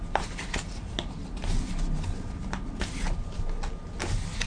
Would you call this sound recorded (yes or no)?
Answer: yes